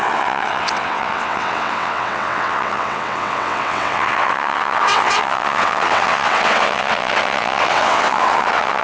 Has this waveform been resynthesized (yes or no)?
yes